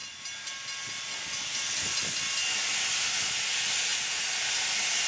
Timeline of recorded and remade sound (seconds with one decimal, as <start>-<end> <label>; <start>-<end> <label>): 0.0-5.1 recorded